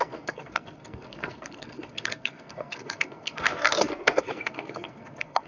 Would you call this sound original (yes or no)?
no